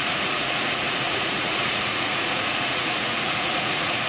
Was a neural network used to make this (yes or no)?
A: yes